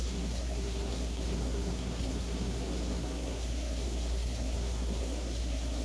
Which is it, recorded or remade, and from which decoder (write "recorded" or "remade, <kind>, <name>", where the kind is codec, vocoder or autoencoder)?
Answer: remade, codec, SNAC